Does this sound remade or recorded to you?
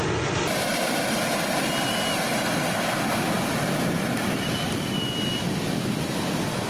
recorded